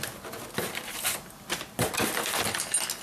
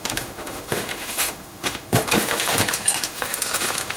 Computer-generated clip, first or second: second